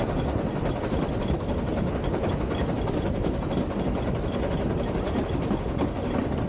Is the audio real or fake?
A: real